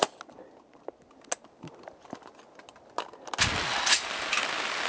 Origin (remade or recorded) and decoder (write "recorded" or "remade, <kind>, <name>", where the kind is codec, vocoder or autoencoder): recorded